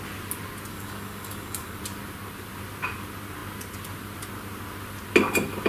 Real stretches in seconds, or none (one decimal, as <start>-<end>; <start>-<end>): 0.0-0.7; 1.8-5.7